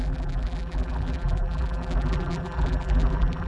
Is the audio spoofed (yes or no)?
yes